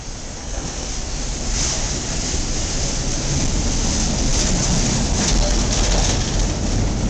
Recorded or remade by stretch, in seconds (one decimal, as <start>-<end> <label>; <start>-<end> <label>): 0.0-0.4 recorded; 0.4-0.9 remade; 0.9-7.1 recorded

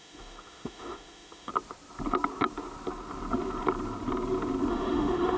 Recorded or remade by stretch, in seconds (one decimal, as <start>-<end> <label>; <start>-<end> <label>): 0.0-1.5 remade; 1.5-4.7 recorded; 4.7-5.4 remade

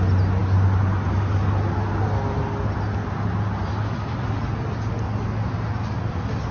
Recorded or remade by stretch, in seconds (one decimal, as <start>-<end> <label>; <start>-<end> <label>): 0.0-6.5 recorded

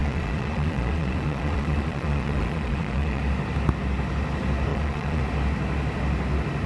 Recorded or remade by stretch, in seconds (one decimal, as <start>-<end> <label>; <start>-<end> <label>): 0.0-3.2 remade; 3.2-4.7 recorded; 4.7-5.2 remade; 5.2-6.7 recorded

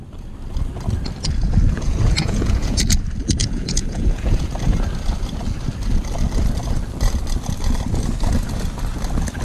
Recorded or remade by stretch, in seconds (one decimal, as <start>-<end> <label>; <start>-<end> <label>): 0.0-1.7 recorded; 1.7-2.9 remade; 2.9-3.4 recorded; 3.4-4.5 remade; 4.5-9.4 recorded

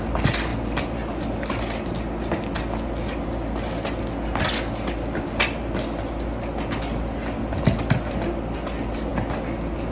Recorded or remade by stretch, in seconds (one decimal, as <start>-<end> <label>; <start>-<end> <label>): 0.0-9.9 recorded